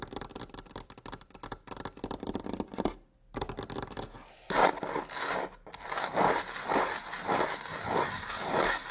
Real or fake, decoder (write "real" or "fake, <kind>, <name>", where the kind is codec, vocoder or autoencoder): real